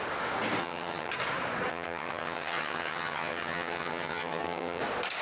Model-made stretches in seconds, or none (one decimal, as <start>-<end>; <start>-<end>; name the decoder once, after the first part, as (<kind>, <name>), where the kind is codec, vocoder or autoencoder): 0.6-1.1 (vocoder, HiFi-GAN); 1.7-4.8